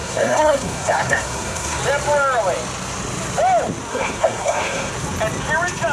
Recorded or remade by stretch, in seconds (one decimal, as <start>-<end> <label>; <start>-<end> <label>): 0.0-1.8 remade; 1.8-3.9 recorded; 3.9-4.9 remade; 4.9-5.9 recorded